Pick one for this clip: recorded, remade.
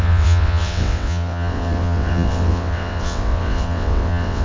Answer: remade